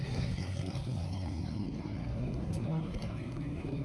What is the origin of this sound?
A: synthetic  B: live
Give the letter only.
A